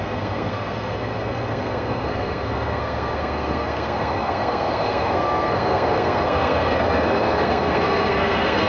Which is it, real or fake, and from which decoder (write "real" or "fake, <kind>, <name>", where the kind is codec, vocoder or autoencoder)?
fake, codec, SNAC